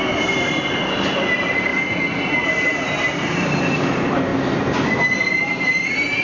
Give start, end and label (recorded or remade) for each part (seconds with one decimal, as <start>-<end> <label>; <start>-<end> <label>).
0.0-1.7 remade; 1.7-2.3 recorded; 2.3-4.3 remade; 4.3-5.4 recorded; 5.4-6.2 remade